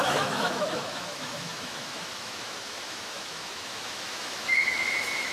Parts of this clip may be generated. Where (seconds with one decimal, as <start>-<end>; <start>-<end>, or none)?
0.0-5.3